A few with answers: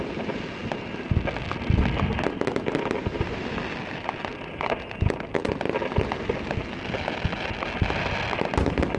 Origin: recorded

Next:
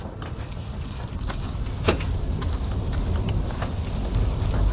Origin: recorded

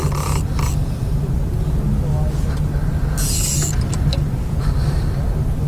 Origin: recorded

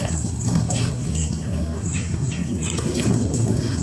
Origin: remade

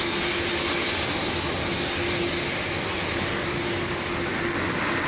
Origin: recorded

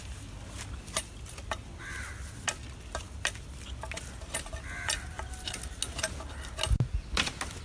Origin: recorded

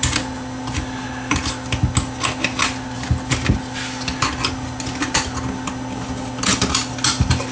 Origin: recorded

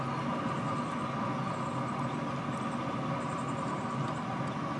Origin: recorded